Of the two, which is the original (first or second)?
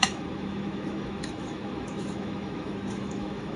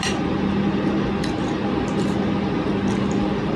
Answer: second